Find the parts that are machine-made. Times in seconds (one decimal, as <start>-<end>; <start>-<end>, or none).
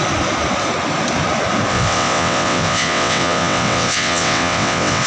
1.7-5.1